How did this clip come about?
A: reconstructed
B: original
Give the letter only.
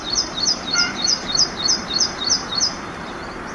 A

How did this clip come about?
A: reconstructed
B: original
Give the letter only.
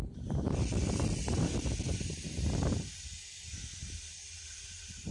B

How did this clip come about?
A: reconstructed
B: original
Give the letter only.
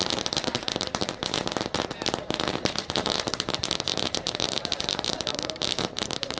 A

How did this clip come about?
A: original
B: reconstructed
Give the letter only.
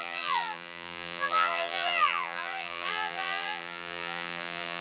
B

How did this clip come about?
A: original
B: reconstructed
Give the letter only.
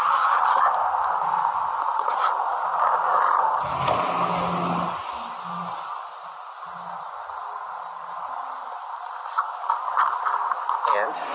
A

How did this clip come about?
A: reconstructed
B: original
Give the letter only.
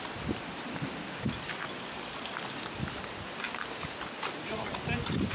B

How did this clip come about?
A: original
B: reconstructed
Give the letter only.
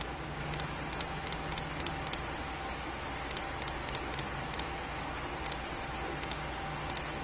A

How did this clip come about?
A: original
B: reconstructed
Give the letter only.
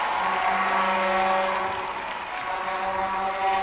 A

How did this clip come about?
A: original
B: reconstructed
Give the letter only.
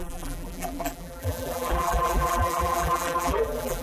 B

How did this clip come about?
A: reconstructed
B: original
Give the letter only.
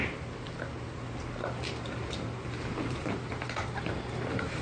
A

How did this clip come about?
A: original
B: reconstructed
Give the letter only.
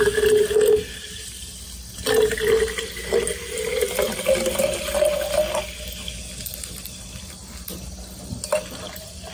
A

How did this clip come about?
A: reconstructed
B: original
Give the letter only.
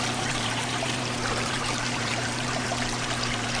A